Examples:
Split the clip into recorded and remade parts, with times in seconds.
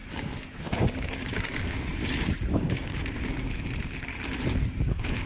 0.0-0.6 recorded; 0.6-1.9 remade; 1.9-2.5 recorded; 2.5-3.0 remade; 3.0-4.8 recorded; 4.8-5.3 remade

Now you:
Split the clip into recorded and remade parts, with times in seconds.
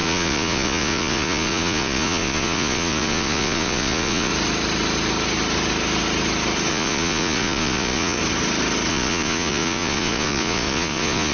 0.0-4.3 remade; 4.3-6.7 recorded; 6.7-8.2 remade; 8.2-8.9 recorded; 8.9-11.3 remade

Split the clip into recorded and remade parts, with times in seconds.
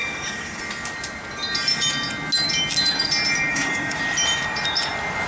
0.0-0.6 remade; 0.6-3.5 recorded; 3.5-4.0 remade; 4.0-5.3 recorded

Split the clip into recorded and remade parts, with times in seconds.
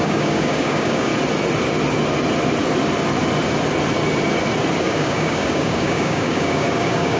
0.0-1.1 remade; 1.1-4.8 recorded; 4.8-7.2 remade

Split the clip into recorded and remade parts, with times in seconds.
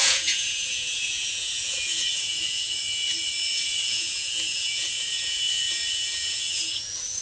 0.0-2.8 remade; 2.8-3.5 recorded; 3.5-7.2 remade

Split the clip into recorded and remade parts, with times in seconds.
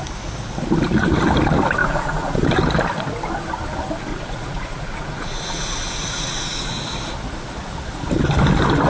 0.0-1.8 recorded; 1.8-2.5 remade; 2.5-4.1 recorded; 4.1-6.8 remade; 6.8-8.9 recorded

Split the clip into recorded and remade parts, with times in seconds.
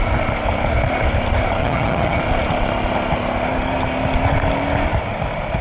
0.0-1.6 recorded; 1.6-2.2 remade; 2.2-5.6 recorded